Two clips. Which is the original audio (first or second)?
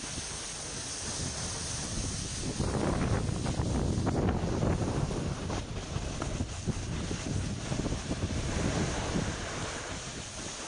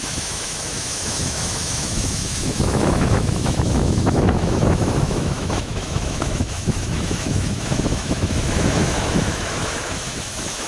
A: first